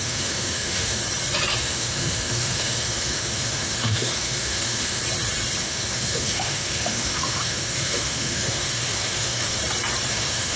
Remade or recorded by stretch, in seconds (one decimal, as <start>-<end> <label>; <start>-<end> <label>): 0.0-1.0 remade; 1.0-1.6 recorded; 1.6-5.0 remade; 5.0-5.6 recorded; 5.6-9.6 remade; 9.6-10.1 recorded; 10.1-10.6 remade